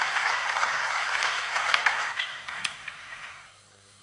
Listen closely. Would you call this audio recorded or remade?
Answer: remade